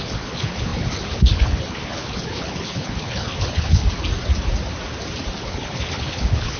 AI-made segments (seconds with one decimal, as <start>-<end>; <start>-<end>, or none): 0.0-3.8; 5.4-6.6